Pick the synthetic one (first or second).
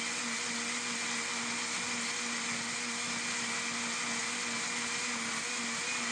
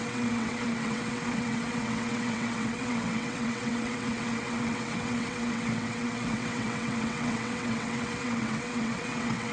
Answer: second